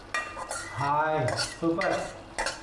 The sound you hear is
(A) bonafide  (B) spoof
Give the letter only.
A